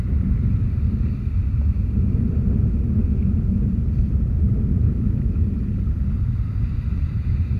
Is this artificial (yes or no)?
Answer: no